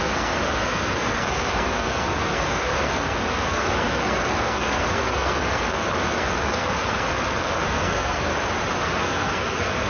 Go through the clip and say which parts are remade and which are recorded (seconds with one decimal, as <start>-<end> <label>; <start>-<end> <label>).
0.0-8.3 remade; 8.3-8.8 recorded; 8.8-9.9 remade